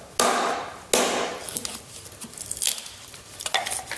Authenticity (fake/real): real